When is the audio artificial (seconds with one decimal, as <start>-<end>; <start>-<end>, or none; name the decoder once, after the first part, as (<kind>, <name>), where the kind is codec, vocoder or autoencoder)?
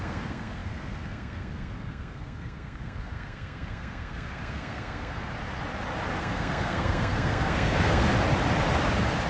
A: 0.0-5.3 (codec, SNAC); 6.2-8.1